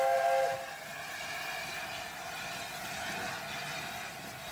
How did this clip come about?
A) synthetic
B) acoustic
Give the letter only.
B